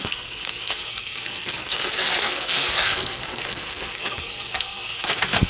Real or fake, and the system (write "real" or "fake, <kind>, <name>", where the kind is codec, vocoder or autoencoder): fake, codec, SNAC